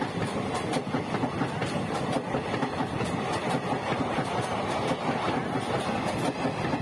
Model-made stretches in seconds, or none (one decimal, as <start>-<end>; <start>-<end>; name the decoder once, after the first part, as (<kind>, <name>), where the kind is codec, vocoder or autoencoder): none